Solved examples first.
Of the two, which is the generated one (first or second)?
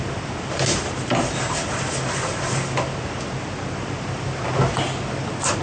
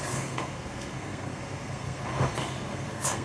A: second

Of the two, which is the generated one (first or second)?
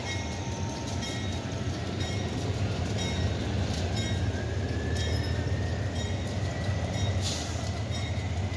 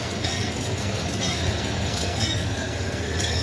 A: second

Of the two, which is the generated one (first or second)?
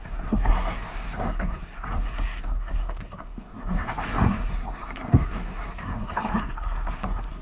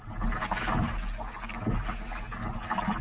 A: first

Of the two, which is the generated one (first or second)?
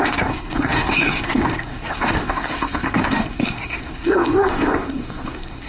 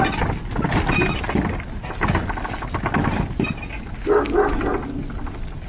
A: first